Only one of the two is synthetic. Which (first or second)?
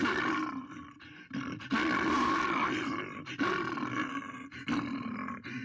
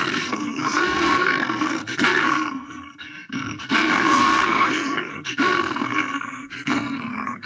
second